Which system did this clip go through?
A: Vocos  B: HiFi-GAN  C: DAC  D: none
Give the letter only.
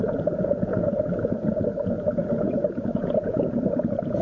A